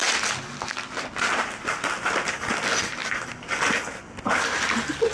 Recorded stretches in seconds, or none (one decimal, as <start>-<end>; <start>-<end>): 0.0-5.1